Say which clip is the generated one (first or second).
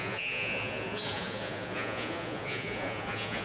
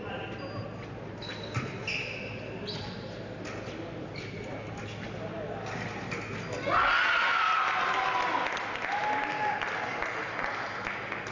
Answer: first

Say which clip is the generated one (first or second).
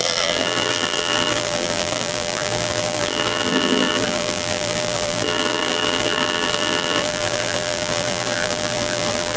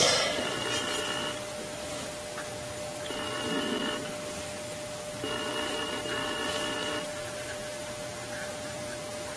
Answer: first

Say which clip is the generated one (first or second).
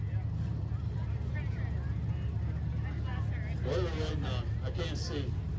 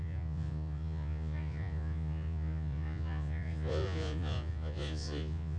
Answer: second